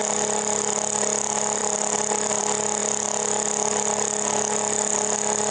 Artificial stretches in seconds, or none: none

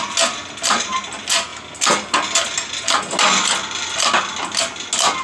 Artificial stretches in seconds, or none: none

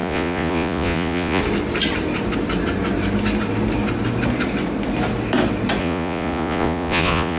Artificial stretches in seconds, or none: 0.0-1.4 (vocoder, Vocos); 5.8-7.4

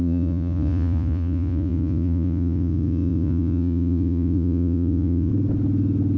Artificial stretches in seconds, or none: 0.0-5.3 (vocoder, Vocos)